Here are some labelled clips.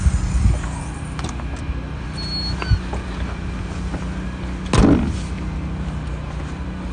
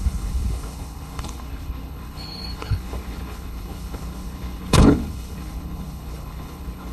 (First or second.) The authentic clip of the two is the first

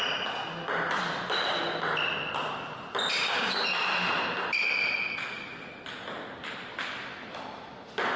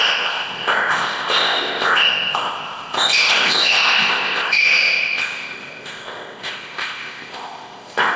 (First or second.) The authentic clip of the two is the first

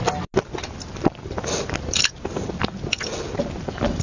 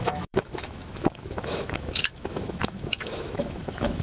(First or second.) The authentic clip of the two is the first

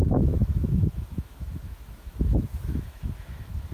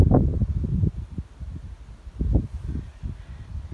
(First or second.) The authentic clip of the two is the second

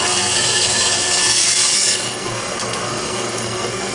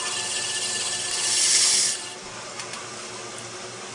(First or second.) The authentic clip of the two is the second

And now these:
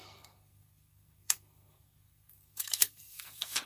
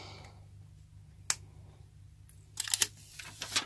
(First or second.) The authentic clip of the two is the second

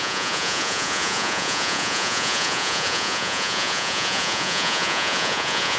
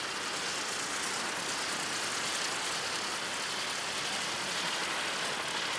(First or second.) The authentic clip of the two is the second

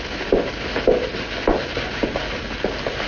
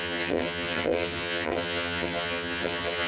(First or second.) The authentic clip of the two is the first